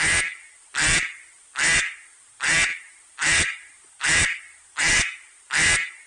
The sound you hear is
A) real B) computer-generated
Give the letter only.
A